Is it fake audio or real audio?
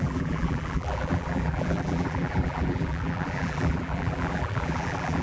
fake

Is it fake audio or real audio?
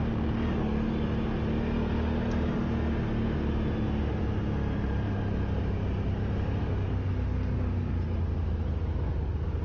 real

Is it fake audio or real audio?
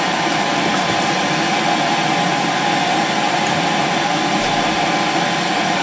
real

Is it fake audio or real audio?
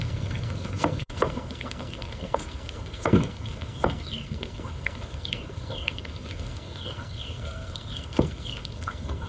fake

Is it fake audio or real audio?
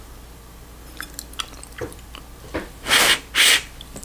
real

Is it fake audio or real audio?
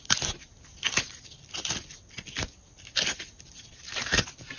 real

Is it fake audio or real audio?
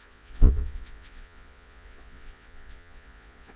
fake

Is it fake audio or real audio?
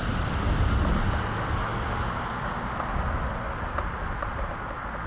real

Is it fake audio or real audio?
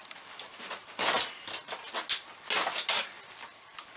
real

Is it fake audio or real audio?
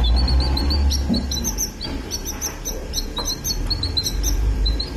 fake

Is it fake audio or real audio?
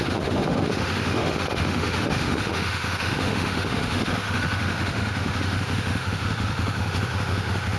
fake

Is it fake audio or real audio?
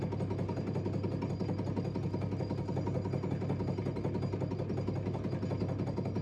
real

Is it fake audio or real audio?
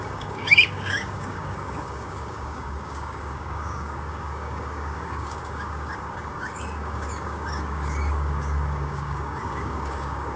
fake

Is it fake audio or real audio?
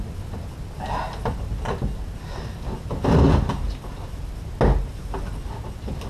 real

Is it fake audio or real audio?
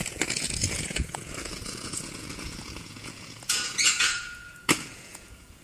fake